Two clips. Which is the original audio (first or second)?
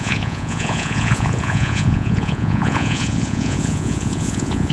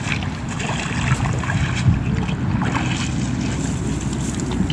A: second